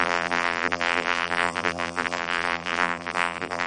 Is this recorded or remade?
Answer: remade